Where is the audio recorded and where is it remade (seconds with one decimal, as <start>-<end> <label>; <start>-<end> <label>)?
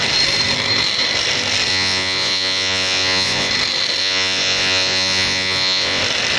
0.0-1.7 recorded; 1.7-3.5 remade; 3.5-4.0 recorded; 4.0-6.0 remade; 6.0-6.4 recorded